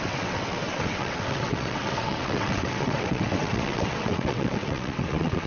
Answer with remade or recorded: remade